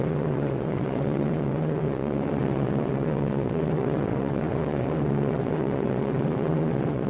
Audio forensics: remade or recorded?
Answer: remade